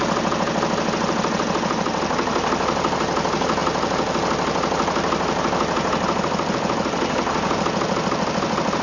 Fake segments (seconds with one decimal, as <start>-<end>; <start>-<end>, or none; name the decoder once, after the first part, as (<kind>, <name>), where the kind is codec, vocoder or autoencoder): none